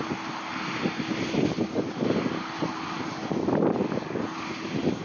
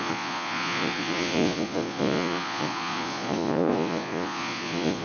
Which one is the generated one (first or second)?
second